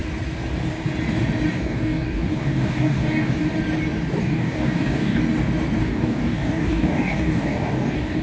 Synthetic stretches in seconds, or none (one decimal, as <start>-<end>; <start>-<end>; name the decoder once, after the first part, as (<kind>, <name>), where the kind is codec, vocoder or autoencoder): 1.5-3.4 (codec, DAC); 4.2-5.2; 5.8-8.2